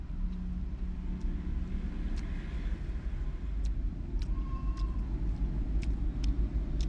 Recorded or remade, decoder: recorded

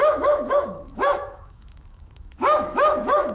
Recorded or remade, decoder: remade, autoencoder, DAC-VAE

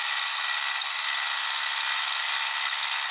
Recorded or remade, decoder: recorded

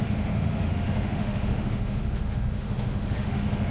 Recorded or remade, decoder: remade, autoencoder, DAC-VAE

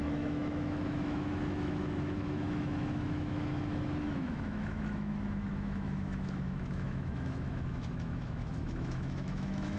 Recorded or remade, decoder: remade, autoencoder, DAC-VAE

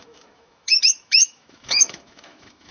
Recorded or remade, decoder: remade, autoencoder, DAC-VAE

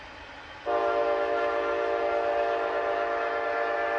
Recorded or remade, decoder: recorded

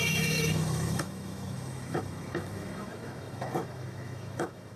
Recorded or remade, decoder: remade, autoencoder, DAC-VAE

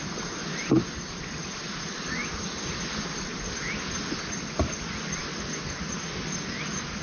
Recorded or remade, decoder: recorded